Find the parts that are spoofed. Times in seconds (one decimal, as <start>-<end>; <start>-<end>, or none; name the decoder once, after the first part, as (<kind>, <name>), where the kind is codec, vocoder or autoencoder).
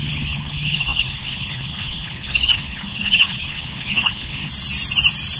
0.0-4.5 (codec, HILCodec)